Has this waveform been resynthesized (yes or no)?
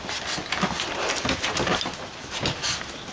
no